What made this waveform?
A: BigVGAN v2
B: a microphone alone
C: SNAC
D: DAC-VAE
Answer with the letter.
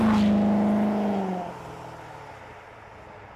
B